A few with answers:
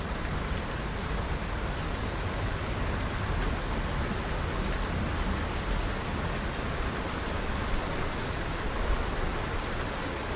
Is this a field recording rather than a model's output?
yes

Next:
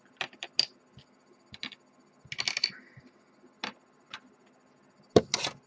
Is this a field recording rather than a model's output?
yes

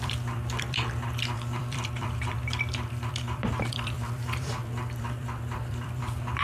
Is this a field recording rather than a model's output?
no